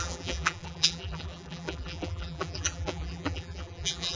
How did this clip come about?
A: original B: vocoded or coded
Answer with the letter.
B